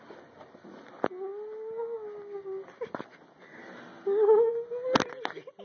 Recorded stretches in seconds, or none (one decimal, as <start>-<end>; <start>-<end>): 0.0-5.6